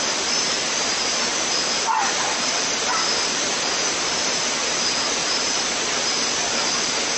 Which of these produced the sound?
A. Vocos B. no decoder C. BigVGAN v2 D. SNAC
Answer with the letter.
C